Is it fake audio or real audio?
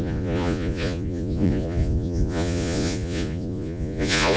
fake